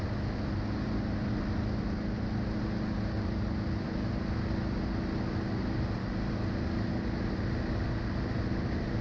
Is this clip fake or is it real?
real